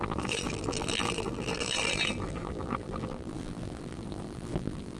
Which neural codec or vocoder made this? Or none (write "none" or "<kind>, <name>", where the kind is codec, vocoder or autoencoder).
vocoder, BigVGAN v2